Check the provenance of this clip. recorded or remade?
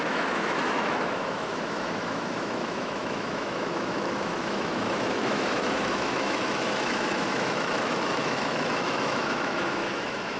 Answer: remade